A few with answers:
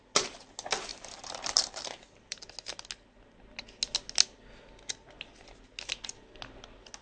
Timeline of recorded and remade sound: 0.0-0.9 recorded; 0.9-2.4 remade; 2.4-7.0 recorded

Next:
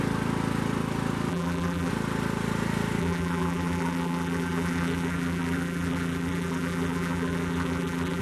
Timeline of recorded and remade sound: 0.0-1.3 recorded; 1.3-1.9 remade; 1.9-3.0 recorded; 3.0-8.2 remade

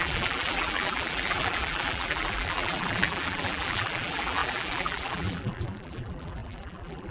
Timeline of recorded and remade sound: 0.0-7.1 remade